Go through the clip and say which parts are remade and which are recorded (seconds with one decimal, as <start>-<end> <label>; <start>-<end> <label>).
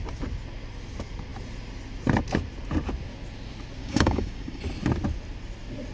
0.0-3.8 recorded; 3.8-4.6 remade; 4.6-5.9 recorded